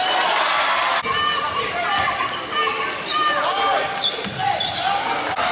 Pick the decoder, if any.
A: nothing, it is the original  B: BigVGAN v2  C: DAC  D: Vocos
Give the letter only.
A